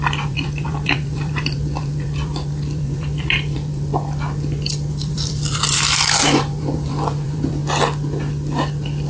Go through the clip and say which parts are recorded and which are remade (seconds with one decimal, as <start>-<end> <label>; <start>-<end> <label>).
0.0-3.9 remade; 3.9-4.9 recorded; 4.9-7.6 remade; 7.6-9.1 recorded